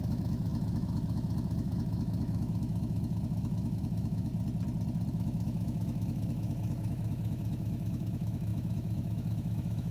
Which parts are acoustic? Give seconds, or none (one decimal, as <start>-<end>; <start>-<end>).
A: 4.3-5.1